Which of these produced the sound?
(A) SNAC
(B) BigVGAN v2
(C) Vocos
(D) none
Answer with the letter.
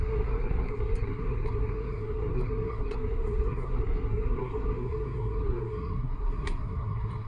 A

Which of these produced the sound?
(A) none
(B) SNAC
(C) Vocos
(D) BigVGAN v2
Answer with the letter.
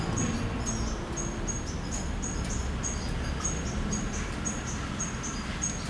A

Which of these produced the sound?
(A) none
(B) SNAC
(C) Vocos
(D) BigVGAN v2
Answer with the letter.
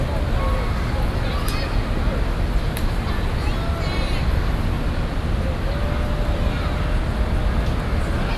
A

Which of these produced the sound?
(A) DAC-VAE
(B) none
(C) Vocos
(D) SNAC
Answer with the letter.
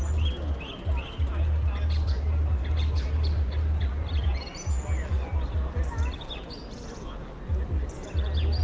B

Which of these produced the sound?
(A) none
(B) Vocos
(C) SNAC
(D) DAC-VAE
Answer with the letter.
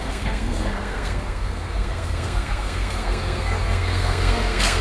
C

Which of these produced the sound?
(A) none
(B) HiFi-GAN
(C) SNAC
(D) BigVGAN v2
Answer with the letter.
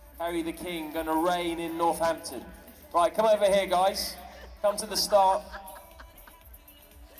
A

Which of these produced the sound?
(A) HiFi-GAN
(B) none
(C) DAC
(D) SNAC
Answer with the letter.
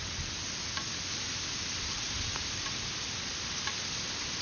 B